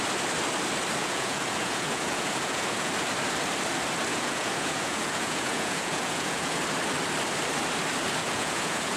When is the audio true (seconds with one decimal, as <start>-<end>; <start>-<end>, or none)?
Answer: 0.0-1.0; 2.9-4.1; 6.6-8.2

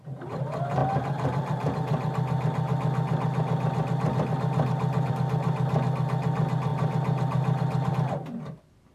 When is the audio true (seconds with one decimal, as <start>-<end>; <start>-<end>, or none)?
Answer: 0.0-8.9

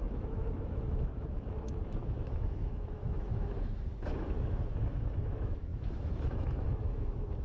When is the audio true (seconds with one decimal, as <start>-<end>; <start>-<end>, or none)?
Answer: none